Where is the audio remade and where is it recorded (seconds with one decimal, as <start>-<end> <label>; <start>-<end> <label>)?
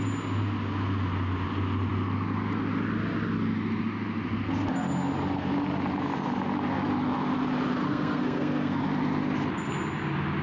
0.0-7.7 recorded; 7.7-8.8 remade; 8.8-10.4 recorded